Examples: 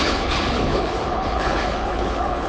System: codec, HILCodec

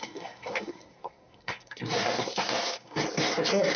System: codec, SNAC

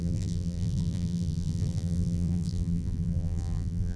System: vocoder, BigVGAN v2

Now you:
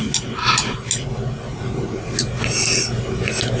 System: none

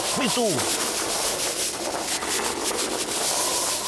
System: none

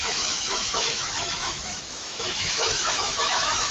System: autoencoder, DAC-VAE